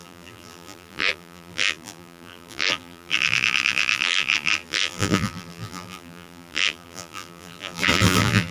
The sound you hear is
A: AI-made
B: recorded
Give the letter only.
A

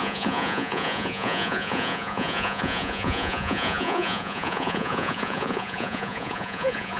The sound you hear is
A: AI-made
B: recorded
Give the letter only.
A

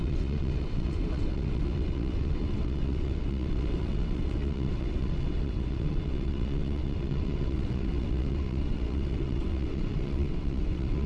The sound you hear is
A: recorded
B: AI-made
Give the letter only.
B